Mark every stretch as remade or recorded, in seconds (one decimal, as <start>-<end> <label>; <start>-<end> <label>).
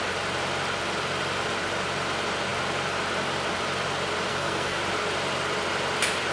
0.0-4.3 recorded; 4.3-4.8 remade; 4.8-6.3 recorded